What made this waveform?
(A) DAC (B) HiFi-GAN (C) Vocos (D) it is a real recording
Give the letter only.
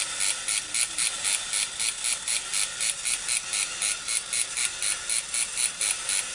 D